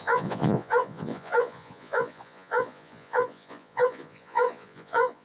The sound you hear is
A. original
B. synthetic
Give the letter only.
B